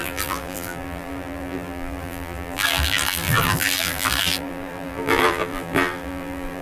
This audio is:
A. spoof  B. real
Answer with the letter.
A